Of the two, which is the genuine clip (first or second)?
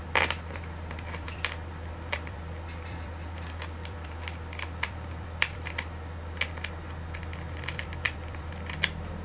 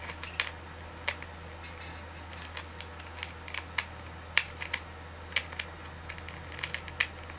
second